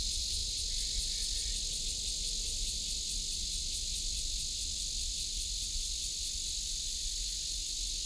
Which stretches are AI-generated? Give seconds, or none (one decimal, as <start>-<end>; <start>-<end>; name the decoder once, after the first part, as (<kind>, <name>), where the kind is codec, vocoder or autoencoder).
none